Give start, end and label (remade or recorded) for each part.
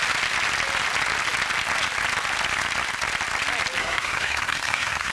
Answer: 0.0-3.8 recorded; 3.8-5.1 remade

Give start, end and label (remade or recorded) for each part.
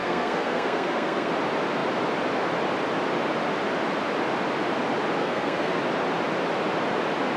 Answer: 0.0-1.3 remade; 1.3-5.2 recorded; 5.2-5.8 remade; 5.8-7.4 recorded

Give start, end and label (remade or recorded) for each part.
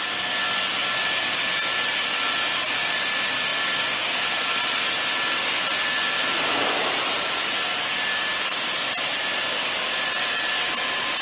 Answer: 0.0-11.2 recorded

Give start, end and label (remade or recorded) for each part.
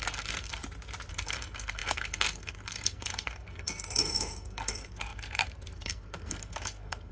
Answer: 0.0-0.6 remade; 0.6-1.1 recorded; 1.1-7.1 remade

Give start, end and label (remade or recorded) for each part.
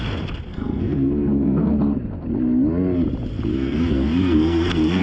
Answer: 0.0-0.5 recorded; 0.5-1.7 remade; 1.7-3.5 recorded; 3.5-5.0 remade